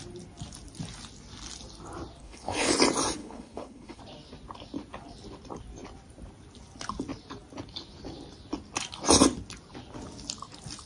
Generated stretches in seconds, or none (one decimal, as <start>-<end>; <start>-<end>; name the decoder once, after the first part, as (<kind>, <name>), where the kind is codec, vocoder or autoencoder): 2.2-2.7 (codec, HILCodec); 3.2-4.0